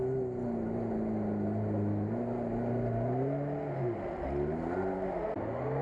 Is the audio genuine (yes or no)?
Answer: yes